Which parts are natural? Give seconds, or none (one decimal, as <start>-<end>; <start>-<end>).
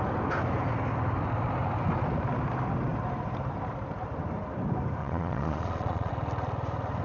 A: 0.0-5.0; 6.1-7.0